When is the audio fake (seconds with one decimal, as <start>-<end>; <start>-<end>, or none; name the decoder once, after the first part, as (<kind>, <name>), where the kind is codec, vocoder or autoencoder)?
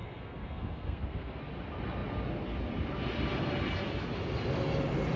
0.0-1.4 (codec, SNAC)